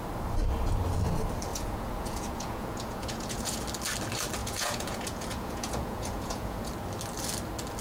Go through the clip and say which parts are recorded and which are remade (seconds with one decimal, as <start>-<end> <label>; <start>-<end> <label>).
0.0-1.5 recorded; 1.5-3.6 remade; 3.6-4.4 recorded; 4.4-6.7 remade; 6.7-7.8 recorded